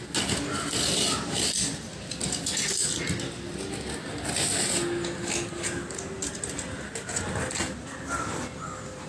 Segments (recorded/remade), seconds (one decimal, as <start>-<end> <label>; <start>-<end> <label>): 0.0-9.1 recorded